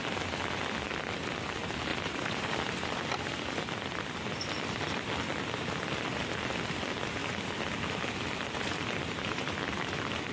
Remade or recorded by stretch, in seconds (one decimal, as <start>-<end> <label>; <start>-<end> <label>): 0.0-1.9 recorded; 1.9-2.5 remade; 2.5-9.2 recorded; 9.2-9.9 remade; 9.9-10.3 recorded